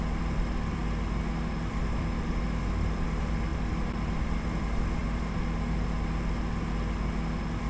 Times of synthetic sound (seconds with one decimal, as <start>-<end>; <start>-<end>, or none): 0.0-0.8; 1.7-5.0